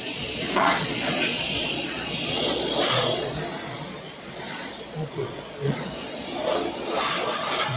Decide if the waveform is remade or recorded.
remade